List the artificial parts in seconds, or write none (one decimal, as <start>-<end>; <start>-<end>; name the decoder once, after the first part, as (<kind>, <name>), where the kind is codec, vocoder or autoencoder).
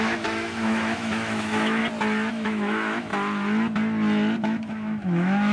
0.0-1.8 (autoencoder, DAC-VAE); 2.3-3.1; 4.4-5.5